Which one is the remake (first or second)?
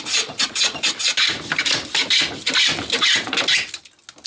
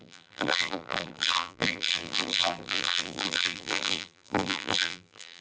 second